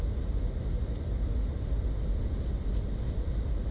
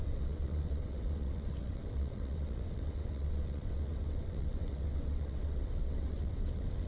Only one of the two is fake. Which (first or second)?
second